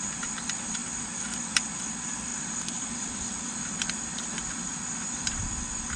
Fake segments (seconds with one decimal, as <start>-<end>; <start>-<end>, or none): 0.0-4.7; 5.2-6.0